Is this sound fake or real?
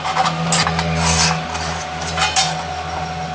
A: real